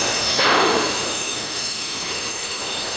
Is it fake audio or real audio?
fake